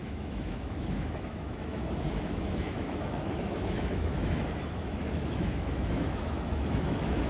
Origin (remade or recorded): remade